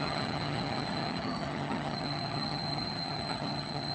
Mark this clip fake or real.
fake